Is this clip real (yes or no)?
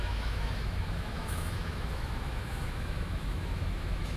no